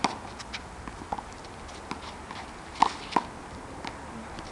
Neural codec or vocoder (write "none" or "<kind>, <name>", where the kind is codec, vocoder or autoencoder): none